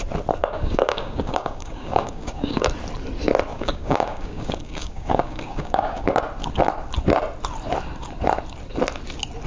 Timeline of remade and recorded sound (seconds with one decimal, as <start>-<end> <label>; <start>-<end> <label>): 0.0-0.4 recorded; 0.4-2.7 remade; 2.7-3.5 recorded; 3.5-6.2 remade; 6.2-9.5 recorded